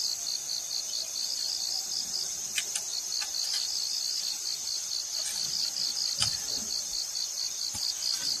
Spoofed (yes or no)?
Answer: no